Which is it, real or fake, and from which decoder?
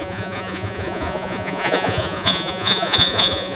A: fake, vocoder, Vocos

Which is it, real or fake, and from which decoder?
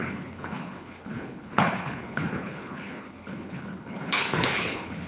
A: fake, codec, HILCodec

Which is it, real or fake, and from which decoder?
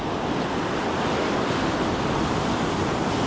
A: real